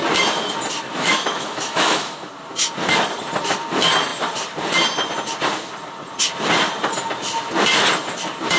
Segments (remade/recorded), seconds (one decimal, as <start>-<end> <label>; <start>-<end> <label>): 0.0-0.9 recorded; 0.9-2.3 remade; 2.3-8.6 recorded